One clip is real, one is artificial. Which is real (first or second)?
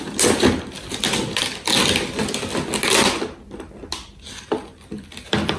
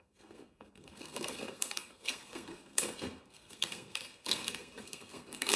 first